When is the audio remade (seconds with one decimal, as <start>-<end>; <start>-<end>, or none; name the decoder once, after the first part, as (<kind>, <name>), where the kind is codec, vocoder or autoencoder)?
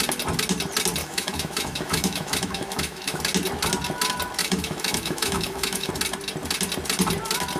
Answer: 1.0-3.2 (autoencoder, DAC-VAE); 4.4-5.9